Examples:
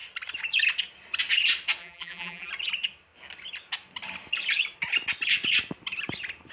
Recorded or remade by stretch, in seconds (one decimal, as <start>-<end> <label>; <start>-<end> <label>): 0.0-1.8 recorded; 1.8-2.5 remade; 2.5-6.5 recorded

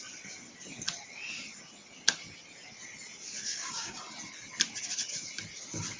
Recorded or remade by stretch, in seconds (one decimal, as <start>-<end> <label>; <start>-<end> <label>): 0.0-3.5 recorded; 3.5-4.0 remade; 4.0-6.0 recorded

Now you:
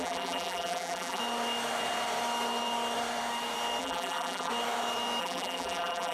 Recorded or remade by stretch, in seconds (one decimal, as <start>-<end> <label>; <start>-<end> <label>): 0.0-1.2 remade; 1.2-3.8 recorded; 3.8-4.5 remade; 4.5-5.2 recorded; 5.2-6.1 remade

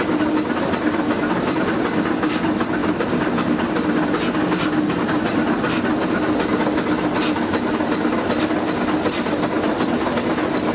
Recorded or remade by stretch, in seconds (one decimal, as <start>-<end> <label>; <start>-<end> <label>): 0.0-10.7 recorded

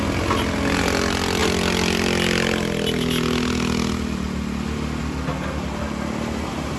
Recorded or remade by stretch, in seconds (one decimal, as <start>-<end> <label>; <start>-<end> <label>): 0.0-6.8 recorded